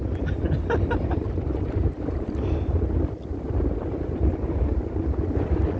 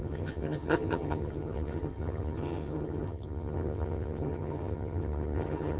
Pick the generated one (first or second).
second